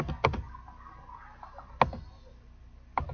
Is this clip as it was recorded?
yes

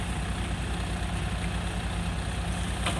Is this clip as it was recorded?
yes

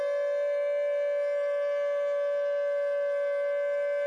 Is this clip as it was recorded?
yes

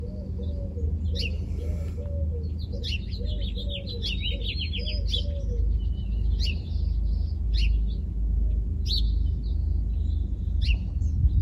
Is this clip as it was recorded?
yes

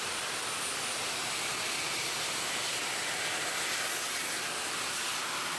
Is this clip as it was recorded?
yes